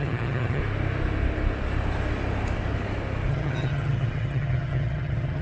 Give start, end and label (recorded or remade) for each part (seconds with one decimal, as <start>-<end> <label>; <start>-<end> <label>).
0.0-0.6 remade; 0.6-3.3 recorded; 3.3-5.4 remade